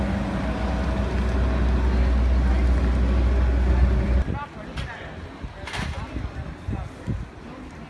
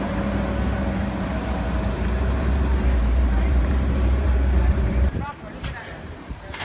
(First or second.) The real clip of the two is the first